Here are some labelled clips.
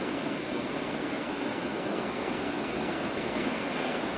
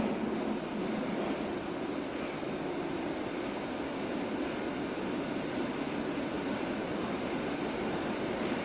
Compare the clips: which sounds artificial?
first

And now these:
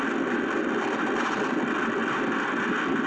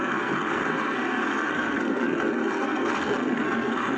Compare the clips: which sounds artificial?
second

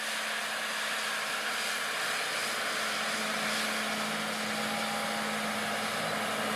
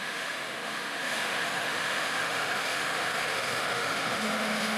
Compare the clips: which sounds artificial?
second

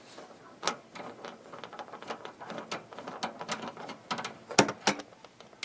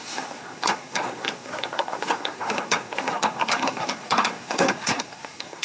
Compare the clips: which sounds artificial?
second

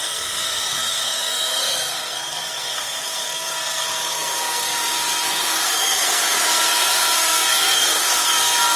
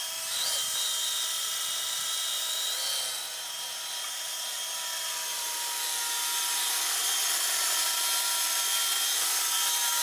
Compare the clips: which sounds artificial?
first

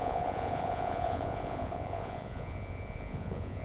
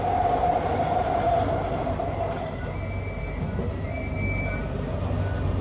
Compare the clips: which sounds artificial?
first